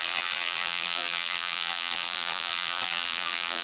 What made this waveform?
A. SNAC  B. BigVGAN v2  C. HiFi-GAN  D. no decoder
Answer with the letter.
B